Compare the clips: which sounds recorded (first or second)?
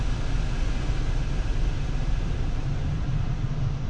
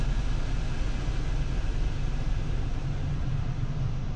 second